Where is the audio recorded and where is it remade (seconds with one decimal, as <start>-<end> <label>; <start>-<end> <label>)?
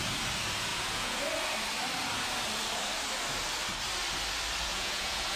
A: 0.0-0.7 recorded; 0.7-1.2 remade; 1.2-4.7 recorded; 4.7-5.4 remade